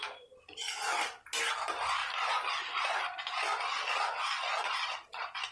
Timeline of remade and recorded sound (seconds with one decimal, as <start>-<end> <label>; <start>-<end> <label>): 0.0-5.5 recorded